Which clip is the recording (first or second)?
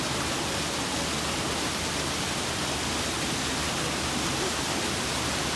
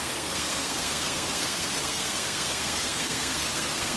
first